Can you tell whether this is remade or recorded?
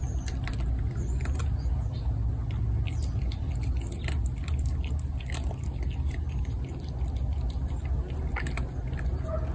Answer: recorded